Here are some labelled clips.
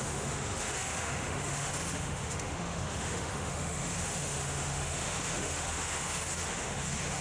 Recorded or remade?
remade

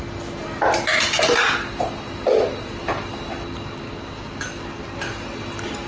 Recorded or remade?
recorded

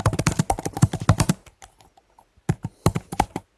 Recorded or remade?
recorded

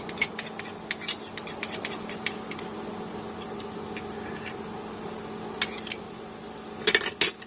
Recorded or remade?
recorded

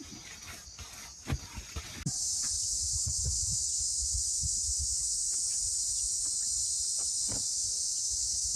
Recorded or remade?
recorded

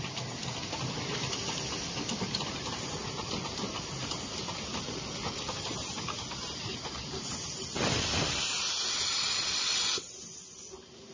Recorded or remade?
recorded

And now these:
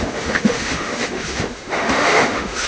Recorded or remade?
remade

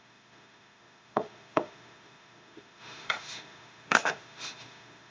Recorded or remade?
remade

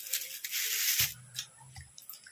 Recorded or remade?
recorded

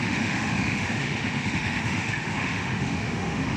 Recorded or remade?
remade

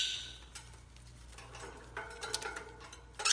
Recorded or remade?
recorded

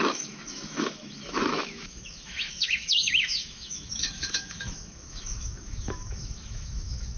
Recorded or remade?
remade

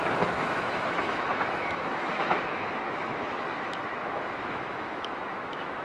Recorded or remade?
remade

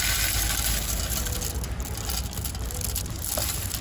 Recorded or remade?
recorded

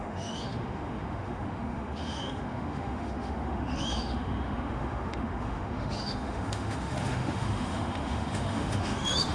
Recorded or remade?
remade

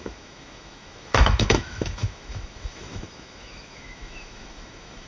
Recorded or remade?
remade